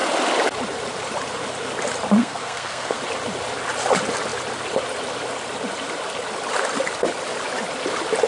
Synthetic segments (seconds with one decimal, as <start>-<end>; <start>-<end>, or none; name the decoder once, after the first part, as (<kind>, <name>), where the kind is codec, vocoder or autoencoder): 2.2-3.0 (codec, SNAC)